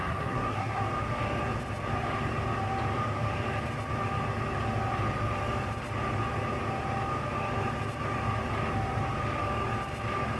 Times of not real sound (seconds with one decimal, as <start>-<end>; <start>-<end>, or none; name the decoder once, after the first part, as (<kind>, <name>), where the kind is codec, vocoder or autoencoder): 0.0-0.8 (codec, SNAC)